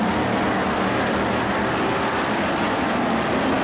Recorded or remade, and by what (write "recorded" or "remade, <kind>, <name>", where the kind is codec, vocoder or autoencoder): recorded